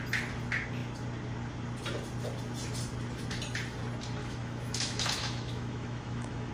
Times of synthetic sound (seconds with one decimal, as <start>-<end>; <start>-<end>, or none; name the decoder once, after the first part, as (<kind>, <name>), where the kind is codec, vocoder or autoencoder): 4.2-6.5 (autoencoder, DAC-VAE)